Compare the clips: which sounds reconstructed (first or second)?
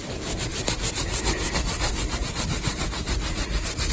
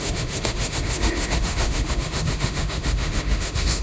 second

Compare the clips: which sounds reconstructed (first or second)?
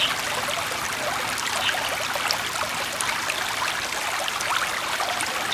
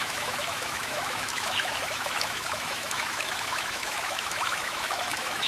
second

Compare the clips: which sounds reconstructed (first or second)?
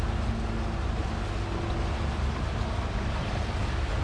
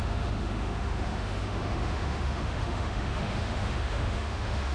second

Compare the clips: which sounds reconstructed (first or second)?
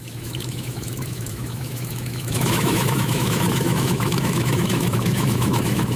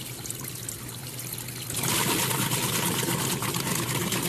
first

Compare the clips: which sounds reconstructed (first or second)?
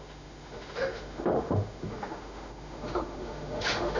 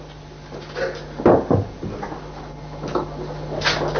first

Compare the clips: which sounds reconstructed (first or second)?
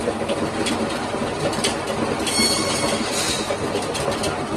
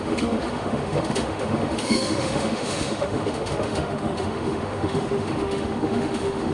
second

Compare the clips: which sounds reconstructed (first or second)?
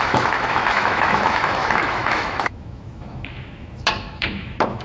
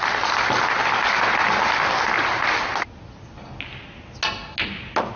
first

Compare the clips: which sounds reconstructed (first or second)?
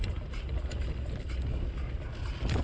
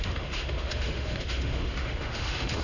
second